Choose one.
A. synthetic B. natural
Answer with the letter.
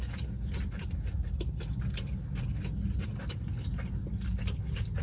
B